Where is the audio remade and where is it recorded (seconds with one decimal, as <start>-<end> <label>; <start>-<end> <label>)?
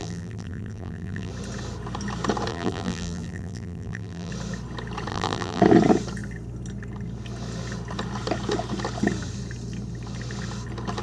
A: 0.0-1.3 remade; 1.3-2.5 recorded; 2.5-4.3 remade; 4.3-5.1 recorded; 5.1-5.6 remade; 5.6-11.0 recorded